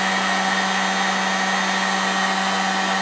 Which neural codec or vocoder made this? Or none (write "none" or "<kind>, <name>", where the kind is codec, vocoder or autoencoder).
none